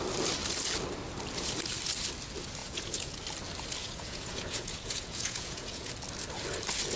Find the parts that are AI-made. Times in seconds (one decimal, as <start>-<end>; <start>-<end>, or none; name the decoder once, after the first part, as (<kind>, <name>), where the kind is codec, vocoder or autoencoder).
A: 2.6-3.2 (vocoder, Vocos); 3.8-5.9

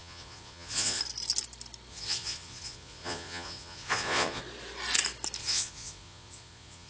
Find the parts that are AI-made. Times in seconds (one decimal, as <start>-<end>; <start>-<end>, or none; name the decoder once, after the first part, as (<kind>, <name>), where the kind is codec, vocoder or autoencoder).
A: 0.0-1.0 (vocoder, Vocos); 1.9-4.4; 5.4-6.9